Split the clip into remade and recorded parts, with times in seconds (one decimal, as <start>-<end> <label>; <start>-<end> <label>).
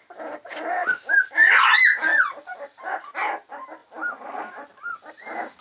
0.0-2.1 recorded; 2.1-2.8 remade; 2.8-3.8 recorded; 3.8-4.9 remade; 4.9-5.6 recorded